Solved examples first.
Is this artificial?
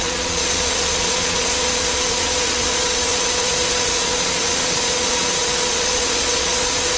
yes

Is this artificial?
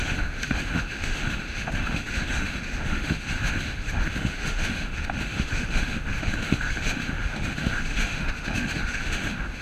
yes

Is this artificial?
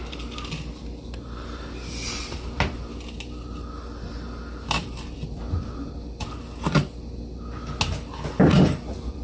no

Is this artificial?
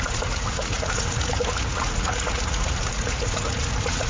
yes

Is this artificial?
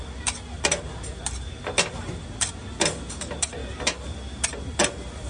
no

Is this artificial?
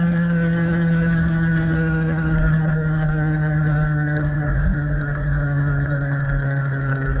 yes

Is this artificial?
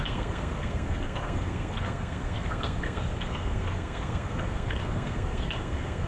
yes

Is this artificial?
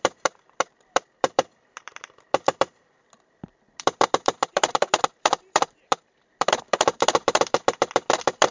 yes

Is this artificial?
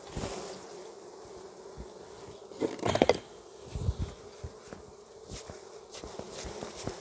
no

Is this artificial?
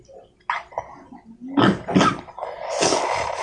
no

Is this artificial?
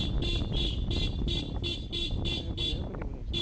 no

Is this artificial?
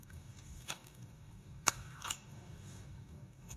yes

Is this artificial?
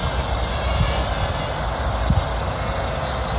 no